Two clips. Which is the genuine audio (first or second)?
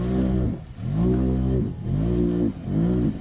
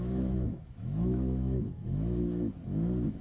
first